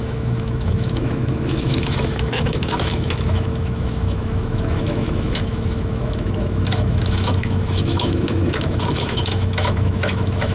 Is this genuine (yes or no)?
no